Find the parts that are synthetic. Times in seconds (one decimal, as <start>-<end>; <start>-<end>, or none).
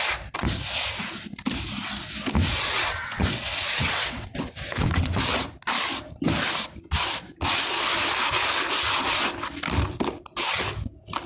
2.4-5.5